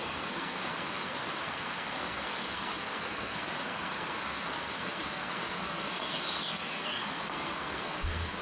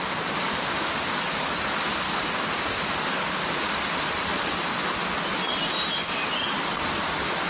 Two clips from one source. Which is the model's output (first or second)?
first